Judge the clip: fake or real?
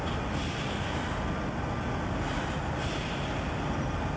real